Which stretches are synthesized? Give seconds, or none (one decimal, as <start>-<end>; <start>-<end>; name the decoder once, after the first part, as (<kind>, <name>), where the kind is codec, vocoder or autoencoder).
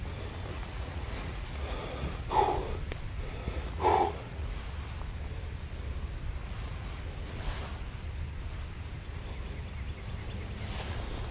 0.5-2.3 (vocoder, Vocos); 3.4-4.6; 6.4-7.0